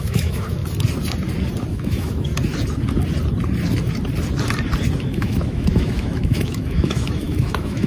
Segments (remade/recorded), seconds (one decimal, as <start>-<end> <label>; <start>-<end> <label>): 0.0-0.6 remade; 0.6-1.7 recorded; 1.7-2.3 remade; 2.3-5.0 recorded; 5.0-7.9 remade